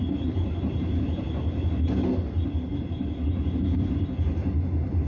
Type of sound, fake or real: real